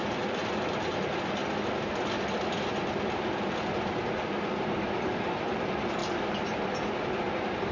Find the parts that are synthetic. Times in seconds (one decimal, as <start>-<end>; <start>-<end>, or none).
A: none